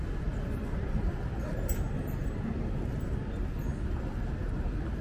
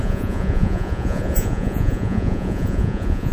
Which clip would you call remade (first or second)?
second